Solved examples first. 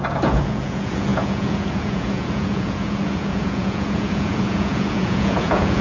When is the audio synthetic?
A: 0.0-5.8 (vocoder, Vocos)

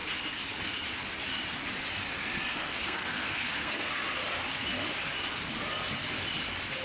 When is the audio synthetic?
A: 2.5-3.9 (codec, SNAC)

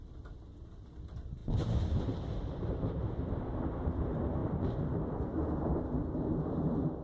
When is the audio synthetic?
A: 4.4-5.2 (vocoder, BigVGAN v2)